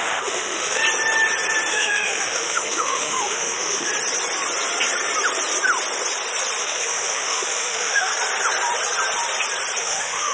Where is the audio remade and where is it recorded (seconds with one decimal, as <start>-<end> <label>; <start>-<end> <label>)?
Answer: 0.0-0.8 remade; 0.8-1.7 recorded; 1.7-3.9 remade; 3.9-6.6 recorded; 6.6-8.1 remade; 8.1-9.8 recorded; 9.8-10.3 remade